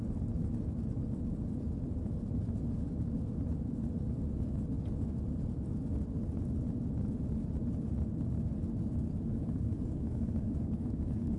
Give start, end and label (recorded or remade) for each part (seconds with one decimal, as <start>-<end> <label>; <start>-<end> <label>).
0.0-9.3 recorded; 9.3-11.4 remade